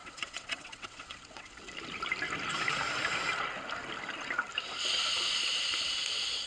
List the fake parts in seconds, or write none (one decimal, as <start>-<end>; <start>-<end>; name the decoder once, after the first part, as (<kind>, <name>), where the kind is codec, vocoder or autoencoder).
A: 0.0-1.6 (vocoder, WaveNeXt)